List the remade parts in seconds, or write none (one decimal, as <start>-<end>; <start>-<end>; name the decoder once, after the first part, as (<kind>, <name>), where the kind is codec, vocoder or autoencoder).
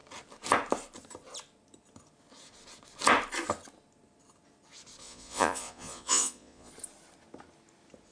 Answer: 5.0-6.7 (vocoder, Vocos)